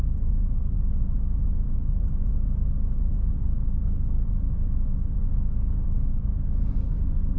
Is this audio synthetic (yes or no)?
yes